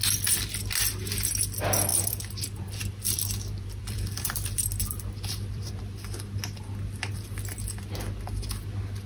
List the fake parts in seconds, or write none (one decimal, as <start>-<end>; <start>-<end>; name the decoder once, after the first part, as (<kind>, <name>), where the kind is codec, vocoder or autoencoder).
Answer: 1.9-5.7 (vocoder, BigVGAN v2)